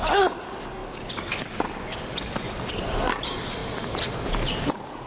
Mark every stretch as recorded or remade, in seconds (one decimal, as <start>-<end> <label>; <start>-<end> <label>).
0.0-3.6 remade; 3.6-4.6 recorded; 4.6-5.1 remade